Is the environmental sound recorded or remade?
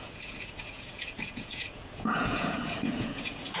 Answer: remade